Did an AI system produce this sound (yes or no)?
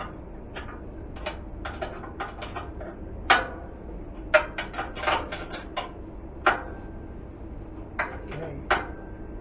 no